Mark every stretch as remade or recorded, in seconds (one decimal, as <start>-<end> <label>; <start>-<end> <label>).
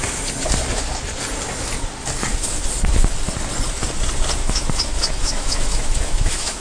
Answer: 0.0-4.4 recorded; 4.4-6.6 remade